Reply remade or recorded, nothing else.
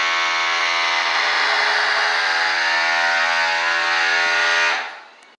recorded